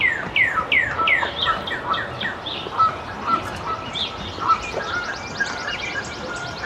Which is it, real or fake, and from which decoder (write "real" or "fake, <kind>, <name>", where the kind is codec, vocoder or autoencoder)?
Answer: real